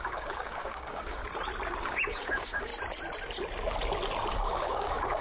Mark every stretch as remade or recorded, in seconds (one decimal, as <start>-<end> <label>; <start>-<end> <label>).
0.0-1.2 remade; 1.2-1.8 recorded; 1.8-2.7 remade; 2.7-4.3 recorded; 4.3-5.2 remade